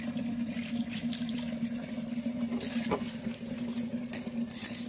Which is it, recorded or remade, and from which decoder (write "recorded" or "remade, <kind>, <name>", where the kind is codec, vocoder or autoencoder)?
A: recorded